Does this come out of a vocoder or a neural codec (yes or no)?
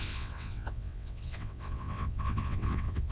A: yes